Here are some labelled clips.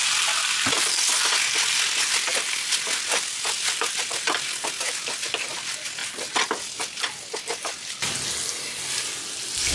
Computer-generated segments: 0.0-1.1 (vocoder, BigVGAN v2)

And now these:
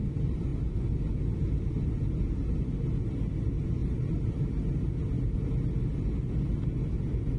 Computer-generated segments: 3.8-4.4 (vocoder, BigVGAN v2)

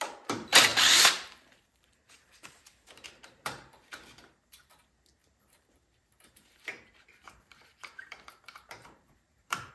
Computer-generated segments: 0.7-3.8 (vocoder, BigVGAN v2); 5.2-9.7

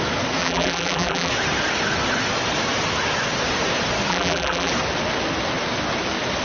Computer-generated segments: 0.4-1.3 (vocoder, BigVGAN v2); 4.1-4.7